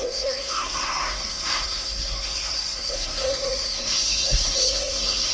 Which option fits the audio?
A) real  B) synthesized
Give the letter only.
B